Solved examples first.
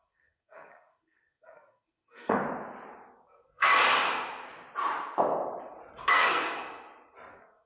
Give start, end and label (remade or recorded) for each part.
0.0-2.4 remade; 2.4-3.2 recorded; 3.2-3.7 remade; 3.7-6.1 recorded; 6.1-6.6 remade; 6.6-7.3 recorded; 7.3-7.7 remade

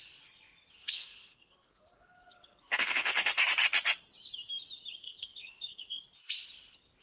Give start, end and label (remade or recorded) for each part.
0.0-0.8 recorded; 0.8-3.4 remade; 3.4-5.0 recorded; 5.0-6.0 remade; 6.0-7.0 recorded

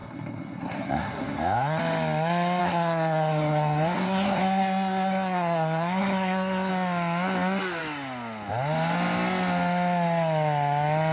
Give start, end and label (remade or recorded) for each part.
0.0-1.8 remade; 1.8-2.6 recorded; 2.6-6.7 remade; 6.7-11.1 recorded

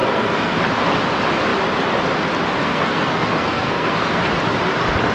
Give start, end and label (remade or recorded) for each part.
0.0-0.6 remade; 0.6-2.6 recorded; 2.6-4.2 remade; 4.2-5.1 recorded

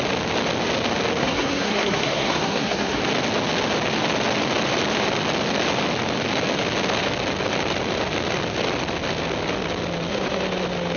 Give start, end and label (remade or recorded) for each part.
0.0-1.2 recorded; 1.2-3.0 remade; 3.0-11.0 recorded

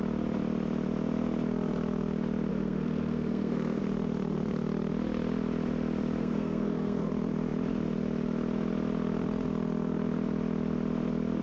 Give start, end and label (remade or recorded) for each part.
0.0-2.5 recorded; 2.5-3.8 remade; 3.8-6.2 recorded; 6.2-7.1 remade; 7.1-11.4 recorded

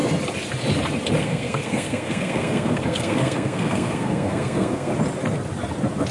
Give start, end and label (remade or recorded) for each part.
0.0-1.2 recorded; 1.2-4.9 remade; 4.9-6.1 recorded